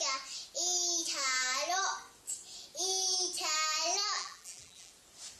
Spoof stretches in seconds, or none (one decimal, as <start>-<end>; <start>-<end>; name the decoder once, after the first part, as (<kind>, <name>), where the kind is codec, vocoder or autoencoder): 4.0-4.9 (vocoder, BigVGAN v2)